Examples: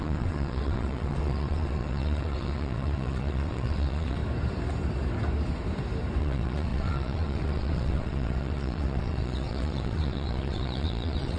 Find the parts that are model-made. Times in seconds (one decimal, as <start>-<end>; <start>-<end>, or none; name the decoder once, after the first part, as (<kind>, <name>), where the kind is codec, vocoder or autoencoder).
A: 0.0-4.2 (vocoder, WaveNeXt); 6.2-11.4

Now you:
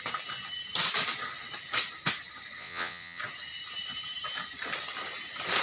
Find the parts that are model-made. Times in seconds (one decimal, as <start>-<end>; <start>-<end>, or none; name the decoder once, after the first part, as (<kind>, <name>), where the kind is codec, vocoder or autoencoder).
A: 2.6-3.2 (vocoder, WaveNeXt)

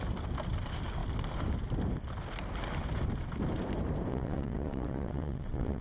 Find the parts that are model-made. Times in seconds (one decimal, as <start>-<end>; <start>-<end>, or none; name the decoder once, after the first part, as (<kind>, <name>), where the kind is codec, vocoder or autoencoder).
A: 4.1-5.8 (vocoder, WaveNeXt)

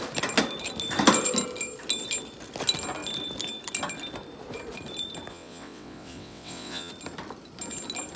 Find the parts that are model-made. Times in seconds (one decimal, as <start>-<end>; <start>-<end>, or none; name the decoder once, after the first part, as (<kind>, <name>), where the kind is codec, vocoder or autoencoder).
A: 5.3-6.9 (vocoder, WaveNeXt)

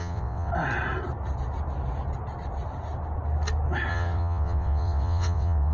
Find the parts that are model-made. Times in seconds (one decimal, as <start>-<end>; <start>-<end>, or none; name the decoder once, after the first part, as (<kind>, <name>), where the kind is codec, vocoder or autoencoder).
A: 0.0-0.5 (vocoder, WaveNeXt); 3.9-5.7

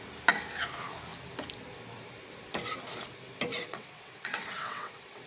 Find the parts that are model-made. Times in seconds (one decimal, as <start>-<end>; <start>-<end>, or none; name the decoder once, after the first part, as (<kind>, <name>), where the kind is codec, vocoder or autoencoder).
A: 3.5-5.3 (vocoder, WaveNeXt)

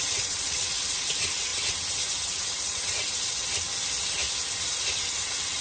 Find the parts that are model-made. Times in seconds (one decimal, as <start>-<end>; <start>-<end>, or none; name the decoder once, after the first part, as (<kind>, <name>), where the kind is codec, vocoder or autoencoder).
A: 0.0-3.7 (vocoder, WaveNeXt); 4.9-5.6